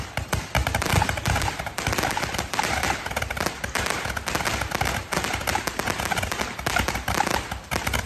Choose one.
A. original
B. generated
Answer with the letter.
A